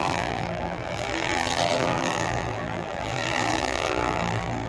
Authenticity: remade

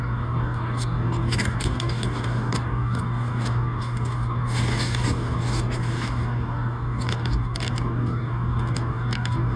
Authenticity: remade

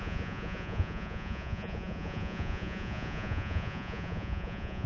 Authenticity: remade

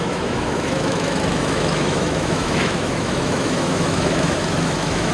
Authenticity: remade